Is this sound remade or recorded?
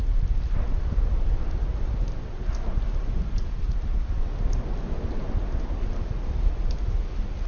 recorded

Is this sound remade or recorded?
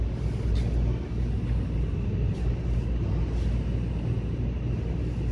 recorded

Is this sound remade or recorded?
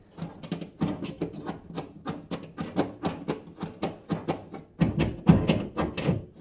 recorded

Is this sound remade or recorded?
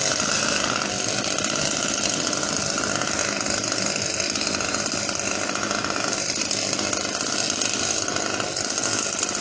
recorded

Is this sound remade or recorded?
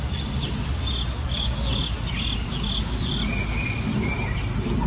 recorded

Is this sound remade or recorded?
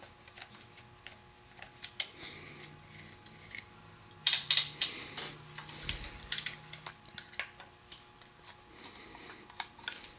recorded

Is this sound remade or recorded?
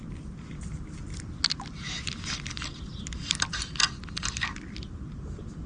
recorded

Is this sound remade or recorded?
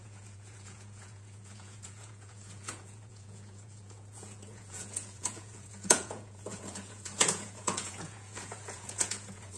remade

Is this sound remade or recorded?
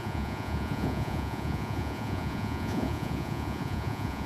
remade